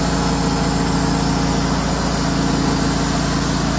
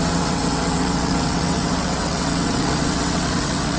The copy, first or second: second